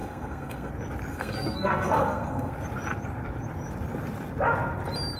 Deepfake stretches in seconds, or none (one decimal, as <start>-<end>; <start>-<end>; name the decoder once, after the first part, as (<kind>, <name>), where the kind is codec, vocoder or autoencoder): 0.0-0.7 (codec, SNAC); 1.1-2.5